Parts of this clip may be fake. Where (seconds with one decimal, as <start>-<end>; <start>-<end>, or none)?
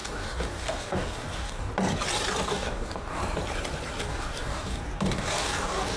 0.0-1.7; 2.4-3.2; 4.0-6.0